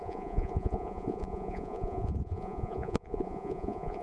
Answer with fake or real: fake